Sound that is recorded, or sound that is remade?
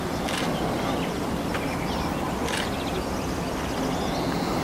recorded